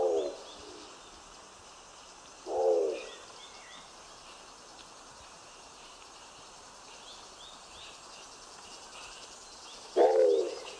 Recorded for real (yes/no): yes